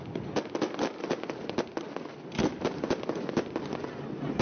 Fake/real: real